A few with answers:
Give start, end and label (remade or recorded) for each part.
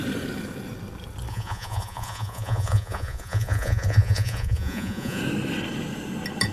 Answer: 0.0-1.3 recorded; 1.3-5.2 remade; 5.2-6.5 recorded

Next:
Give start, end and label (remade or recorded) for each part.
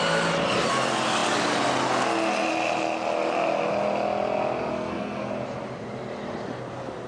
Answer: 0.0-4.7 recorded; 4.7-5.3 remade; 5.3-7.1 recorded